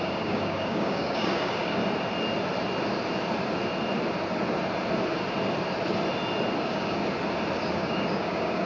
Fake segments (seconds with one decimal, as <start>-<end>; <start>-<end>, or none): 0.0-1.8; 6.6-7.0; 7.7-8.7